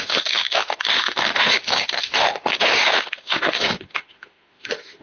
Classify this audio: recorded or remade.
remade